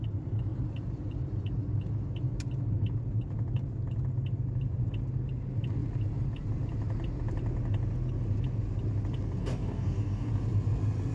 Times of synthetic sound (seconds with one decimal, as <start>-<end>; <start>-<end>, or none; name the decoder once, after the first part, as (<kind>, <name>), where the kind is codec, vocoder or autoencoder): 9.4-10.3 (codec, DAC)